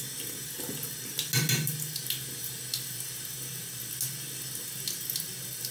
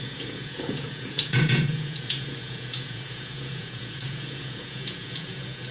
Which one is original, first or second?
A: first